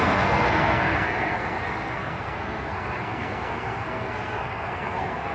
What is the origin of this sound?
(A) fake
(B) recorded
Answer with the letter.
A